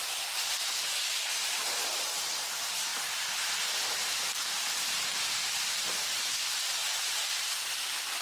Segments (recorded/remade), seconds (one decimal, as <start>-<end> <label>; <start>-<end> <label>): 0.0-2.9 remade; 2.9-3.9 recorded; 3.9-8.2 remade